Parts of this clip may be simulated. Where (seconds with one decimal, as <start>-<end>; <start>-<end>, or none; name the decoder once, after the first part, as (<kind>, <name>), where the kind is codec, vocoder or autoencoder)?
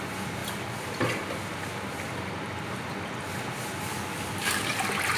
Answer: 3.9-4.7 (codec, DAC)